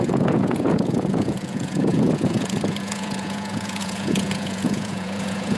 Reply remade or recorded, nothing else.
remade